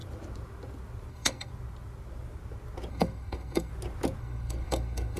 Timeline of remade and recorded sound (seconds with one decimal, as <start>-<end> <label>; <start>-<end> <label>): 0.0-1.1 recorded; 1.1-1.5 remade; 1.5-2.9 recorded; 2.9-3.7 remade; 3.7-4.2 recorded; 4.2-5.2 remade